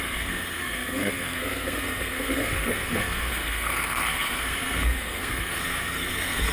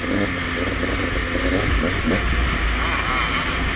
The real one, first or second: second